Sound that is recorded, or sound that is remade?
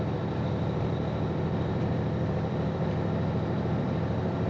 remade